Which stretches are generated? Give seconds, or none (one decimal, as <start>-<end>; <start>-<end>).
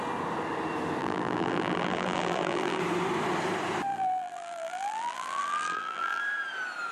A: 1.0-2.8; 3.9-6.2